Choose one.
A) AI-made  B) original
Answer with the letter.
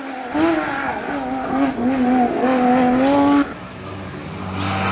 B